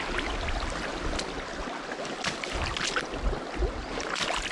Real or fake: real